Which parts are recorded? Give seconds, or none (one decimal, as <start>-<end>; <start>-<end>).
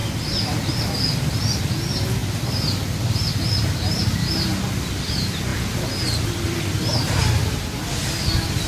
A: 0.0-8.7